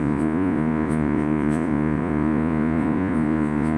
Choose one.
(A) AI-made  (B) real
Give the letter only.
A